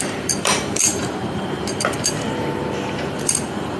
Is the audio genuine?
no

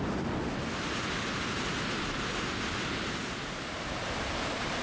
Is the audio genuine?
yes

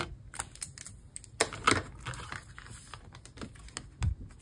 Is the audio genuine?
yes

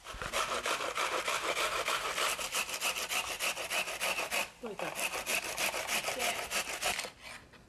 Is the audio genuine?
yes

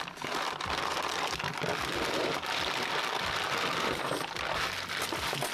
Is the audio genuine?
yes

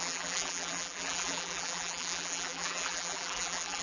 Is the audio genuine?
no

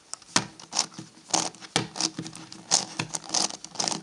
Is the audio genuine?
yes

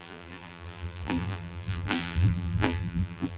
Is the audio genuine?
no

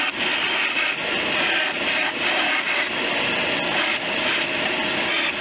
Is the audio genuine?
yes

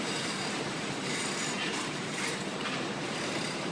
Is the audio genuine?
no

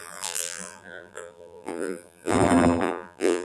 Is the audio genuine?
no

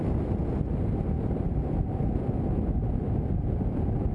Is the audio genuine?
yes